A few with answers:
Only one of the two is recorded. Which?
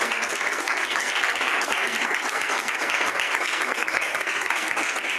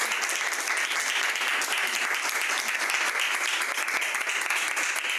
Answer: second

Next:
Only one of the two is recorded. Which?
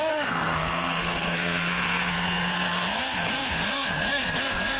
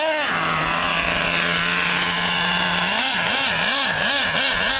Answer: second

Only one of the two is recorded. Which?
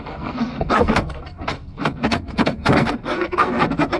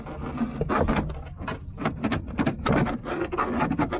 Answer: second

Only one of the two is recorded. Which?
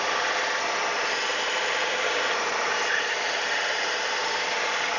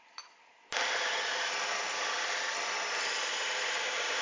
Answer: second